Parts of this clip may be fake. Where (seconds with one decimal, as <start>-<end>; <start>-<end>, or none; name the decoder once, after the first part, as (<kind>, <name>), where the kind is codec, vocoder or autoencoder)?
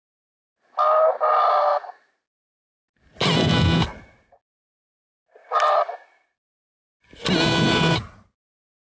none